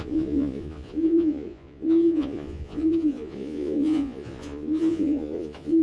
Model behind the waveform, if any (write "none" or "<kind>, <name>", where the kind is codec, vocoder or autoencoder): vocoder, Vocos